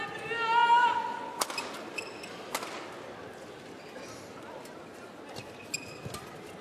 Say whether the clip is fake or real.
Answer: real